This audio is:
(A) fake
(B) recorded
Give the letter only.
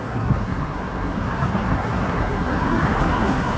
A